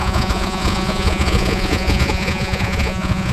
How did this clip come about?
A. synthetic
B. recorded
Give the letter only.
A